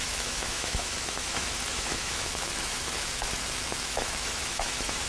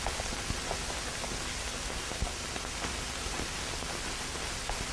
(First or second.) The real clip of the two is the second